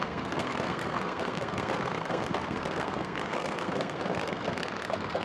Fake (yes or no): yes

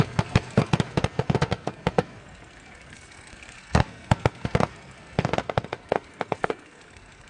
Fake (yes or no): yes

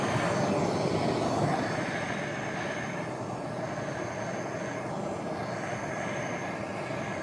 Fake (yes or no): no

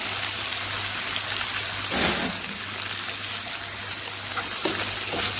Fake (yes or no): no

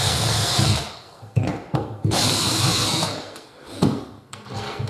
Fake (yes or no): yes